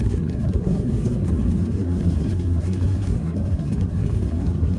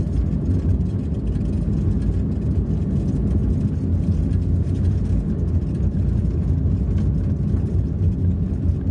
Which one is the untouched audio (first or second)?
second